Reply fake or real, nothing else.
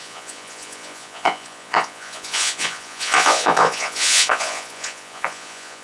fake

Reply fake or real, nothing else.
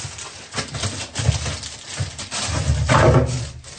real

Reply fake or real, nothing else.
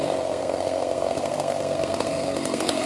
fake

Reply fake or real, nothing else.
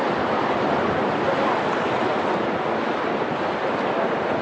real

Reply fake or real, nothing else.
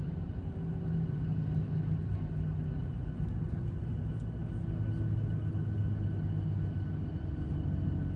real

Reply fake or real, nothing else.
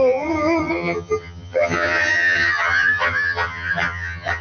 fake